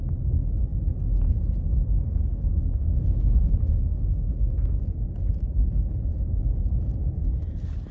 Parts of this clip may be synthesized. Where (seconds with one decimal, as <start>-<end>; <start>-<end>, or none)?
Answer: 2.8-4.8